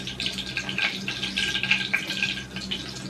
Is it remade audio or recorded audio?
recorded